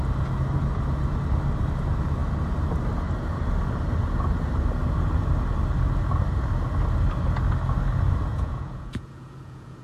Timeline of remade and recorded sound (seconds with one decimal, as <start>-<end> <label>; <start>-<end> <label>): 0.0-8.3 recorded; 8.3-9.8 remade